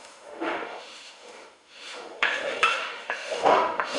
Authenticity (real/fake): fake